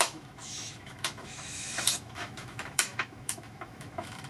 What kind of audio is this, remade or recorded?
remade